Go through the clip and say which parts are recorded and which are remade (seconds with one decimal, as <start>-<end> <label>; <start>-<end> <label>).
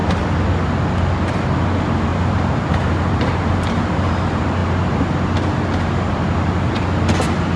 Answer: 0.0-2.1 recorded; 2.1-4.1 remade; 4.1-7.6 recorded